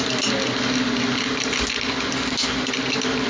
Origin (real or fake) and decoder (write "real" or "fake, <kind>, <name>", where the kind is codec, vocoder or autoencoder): real